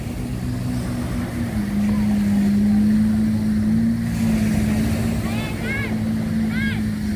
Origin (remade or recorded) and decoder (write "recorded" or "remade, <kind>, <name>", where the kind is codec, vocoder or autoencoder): recorded